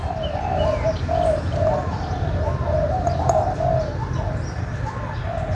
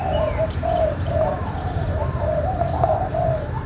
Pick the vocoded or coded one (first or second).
second